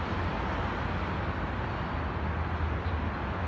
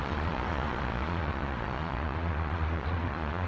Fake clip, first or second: second